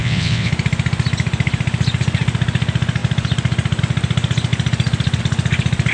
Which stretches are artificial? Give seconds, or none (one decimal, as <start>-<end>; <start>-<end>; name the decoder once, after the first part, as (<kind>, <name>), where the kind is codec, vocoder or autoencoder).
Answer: 0.0-0.5 (vocoder, WaveNeXt)